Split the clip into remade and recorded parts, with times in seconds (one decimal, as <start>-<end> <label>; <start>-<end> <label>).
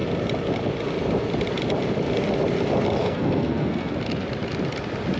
0.0-3.0 recorded; 3.0-3.9 remade; 3.9-5.2 recorded